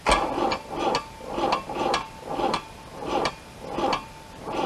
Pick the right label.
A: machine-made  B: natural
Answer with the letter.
B